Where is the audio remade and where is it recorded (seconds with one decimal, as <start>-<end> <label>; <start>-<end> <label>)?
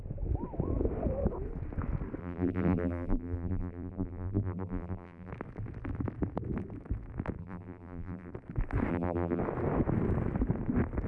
0.0-2.2 recorded; 2.2-5.3 remade; 5.3-7.4 recorded; 7.4-8.3 remade; 8.3-8.9 recorded; 8.9-9.4 remade; 9.4-11.1 recorded